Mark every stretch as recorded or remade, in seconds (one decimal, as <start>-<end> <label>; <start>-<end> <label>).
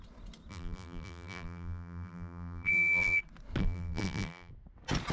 0.0-0.5 recorded; 0.5-3.2 remade; 3.2-3.6 recorded; 3.6-4.5 remade; 4.5-5.1 recorded